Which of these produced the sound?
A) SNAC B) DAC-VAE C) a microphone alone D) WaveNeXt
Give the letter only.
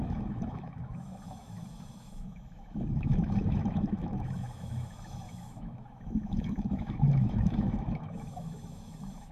B